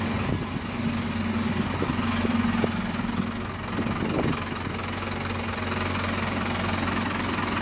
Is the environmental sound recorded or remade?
recorded